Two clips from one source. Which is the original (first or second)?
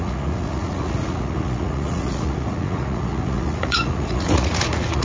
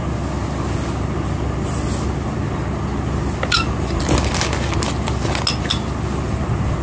second